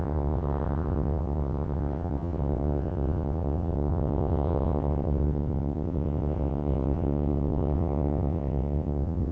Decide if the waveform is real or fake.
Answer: fake